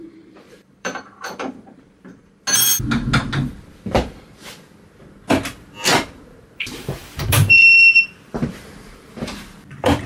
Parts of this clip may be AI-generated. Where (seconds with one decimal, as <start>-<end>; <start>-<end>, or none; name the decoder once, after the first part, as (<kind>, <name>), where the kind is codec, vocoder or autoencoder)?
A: 0.0-2.2 (vocoder, BigVGAN v2); 6.3-10.1